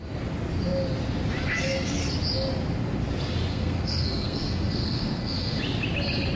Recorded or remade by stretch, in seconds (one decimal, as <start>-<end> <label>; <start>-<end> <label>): 0.0-3.5 recorded; 3.5-5.6 remade; 5.6-6.4 recorded